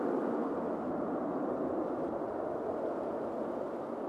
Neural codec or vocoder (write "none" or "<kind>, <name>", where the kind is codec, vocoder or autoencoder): none